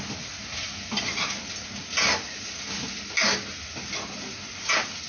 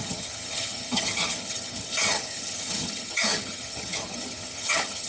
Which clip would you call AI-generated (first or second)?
second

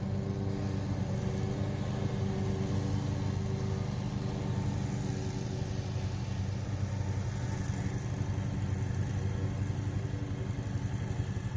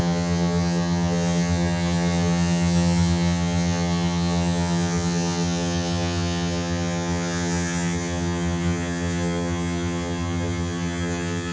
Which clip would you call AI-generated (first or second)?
second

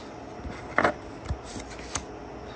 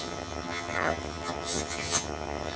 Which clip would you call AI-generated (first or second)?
second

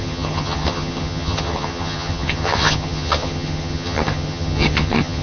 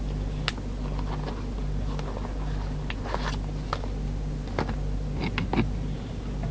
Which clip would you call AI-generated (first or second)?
first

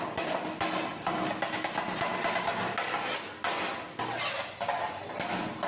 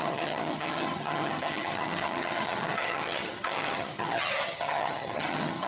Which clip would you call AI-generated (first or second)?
second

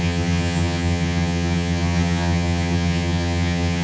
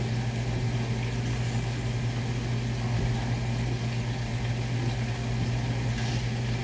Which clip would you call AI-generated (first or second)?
first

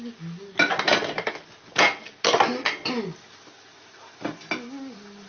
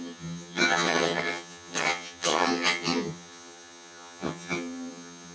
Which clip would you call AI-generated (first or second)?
second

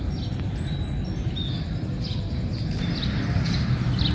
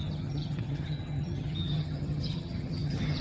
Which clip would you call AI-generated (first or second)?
second